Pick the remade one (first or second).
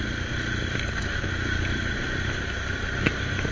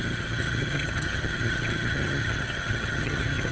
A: second